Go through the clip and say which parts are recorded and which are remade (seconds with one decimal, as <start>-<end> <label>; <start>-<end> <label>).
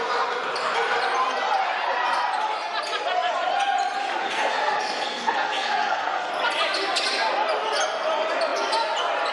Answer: 0.0-4.3 recorded; 4.3-6.3 remade; 6.3-9.3 recorded